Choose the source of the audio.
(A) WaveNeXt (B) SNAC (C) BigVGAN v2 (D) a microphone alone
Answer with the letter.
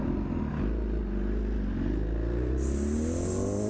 D